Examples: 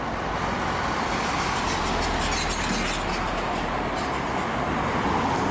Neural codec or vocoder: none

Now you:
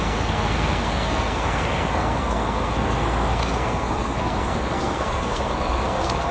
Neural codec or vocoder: codec, SNAC